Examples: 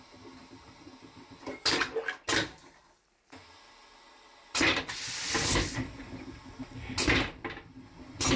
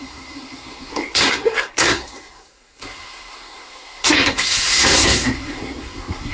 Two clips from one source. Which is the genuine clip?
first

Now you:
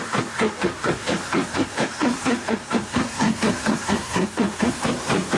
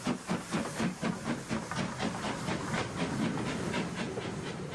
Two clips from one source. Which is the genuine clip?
second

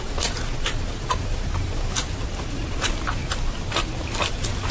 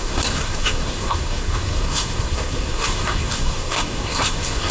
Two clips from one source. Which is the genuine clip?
first